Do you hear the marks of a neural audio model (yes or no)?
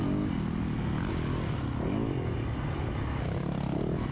no